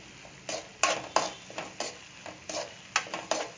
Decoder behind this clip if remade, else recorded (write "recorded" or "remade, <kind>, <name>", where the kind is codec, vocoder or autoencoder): recorded